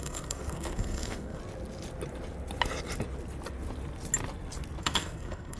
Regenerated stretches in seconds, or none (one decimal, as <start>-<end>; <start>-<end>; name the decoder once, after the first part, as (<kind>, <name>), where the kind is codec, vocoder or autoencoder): 0.0-1.4 (codec, SNAC); 4.8-5.6